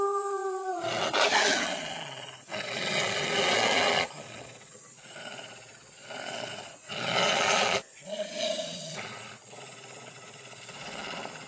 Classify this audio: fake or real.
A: fake